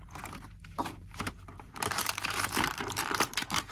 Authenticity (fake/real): fake